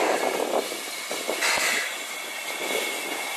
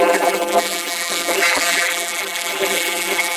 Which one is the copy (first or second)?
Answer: second